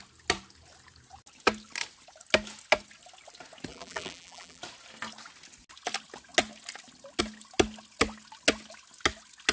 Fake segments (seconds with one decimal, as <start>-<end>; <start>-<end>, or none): 3.7-4.6